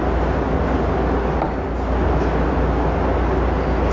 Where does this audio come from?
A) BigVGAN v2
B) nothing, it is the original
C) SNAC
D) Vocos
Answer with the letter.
B